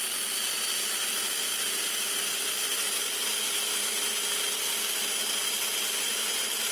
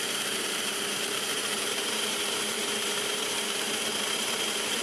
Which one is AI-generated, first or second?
second